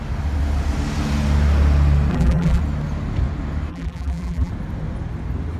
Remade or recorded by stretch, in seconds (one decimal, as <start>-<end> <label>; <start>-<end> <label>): 0.0-2.1 recorded; 2.1-2.6 remade; 2.6-3.7 recorded; 3.7-4.5 remade; 4.5-5.6 recorded